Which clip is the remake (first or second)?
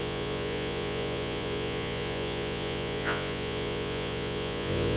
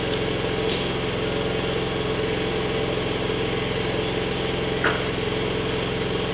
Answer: first